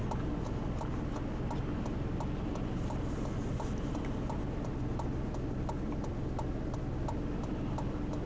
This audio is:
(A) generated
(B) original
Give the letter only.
B